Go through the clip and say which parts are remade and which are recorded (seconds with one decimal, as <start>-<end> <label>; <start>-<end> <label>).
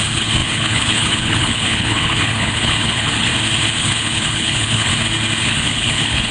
0.0-3.3 remade; 3.3-3.8 recorded; 3.8-4.9 remade; 4.9-5.4 recorded; 5.4-6.3 remade